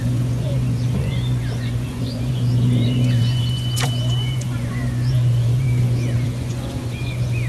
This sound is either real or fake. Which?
fake